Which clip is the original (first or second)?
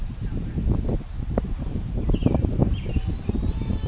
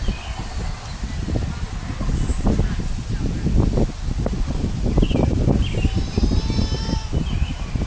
second